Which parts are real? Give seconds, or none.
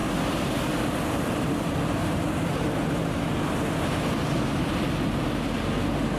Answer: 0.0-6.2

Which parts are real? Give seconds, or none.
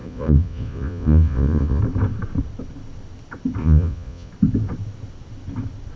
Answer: 1.8-3.6; 4.3-6.0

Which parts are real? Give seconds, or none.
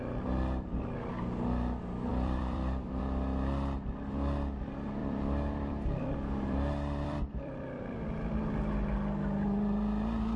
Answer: 0.0-2.1; 3.0-5.0; 8.3-10.4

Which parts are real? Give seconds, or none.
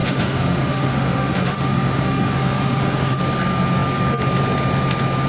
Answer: 3.2-5.3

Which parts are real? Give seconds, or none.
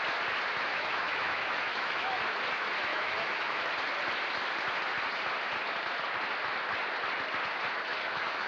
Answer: 0.0-0.7; 2.2-2.9; 3.7-7.9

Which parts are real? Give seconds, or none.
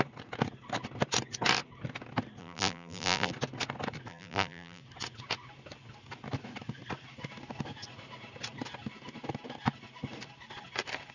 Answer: 0.0-2.4; 3.3-4.1; 4.8-11.1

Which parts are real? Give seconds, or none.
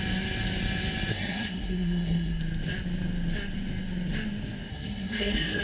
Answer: 0.0-1.1; 2.4-4.7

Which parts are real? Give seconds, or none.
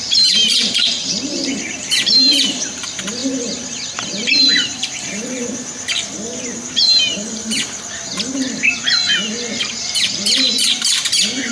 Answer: 3.2-4.4; 8.1-9.6